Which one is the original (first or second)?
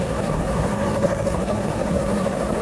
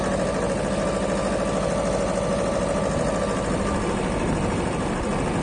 second